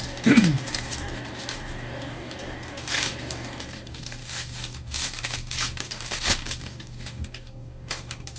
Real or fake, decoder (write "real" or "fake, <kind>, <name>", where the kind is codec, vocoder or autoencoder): fake, codec, DAC